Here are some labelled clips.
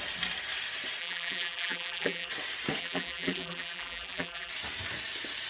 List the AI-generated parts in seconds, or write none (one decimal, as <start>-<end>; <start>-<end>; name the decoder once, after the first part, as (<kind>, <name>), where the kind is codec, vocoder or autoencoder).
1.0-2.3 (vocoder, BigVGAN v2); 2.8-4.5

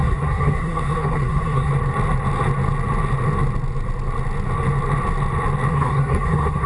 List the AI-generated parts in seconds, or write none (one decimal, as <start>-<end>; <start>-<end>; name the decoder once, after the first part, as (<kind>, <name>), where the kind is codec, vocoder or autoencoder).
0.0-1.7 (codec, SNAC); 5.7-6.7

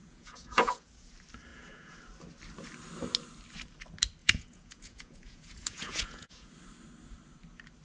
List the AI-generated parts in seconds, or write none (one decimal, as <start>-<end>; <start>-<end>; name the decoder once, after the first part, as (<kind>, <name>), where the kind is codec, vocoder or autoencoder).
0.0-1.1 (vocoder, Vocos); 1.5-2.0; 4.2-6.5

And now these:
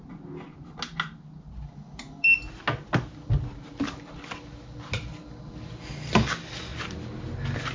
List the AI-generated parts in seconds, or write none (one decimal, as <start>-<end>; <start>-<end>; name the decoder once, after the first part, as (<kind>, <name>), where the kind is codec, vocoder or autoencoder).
none

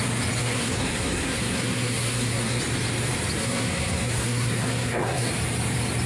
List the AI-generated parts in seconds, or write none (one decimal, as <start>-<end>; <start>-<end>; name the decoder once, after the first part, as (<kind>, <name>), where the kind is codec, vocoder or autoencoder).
0.4-2.6 (codec, SNAC); 3.4-5.3

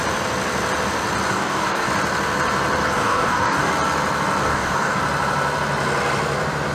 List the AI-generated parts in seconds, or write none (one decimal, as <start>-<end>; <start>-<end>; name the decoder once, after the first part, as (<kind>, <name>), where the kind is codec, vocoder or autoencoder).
1.3-1.9 (codec, DAC); 2.8-3.7; 4.4-5.0

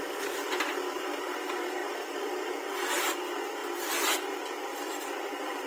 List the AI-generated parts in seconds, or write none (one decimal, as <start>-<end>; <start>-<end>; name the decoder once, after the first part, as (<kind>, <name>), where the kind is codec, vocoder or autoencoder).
none